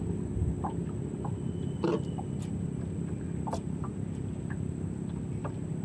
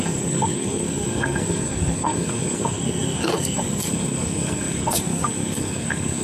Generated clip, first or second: second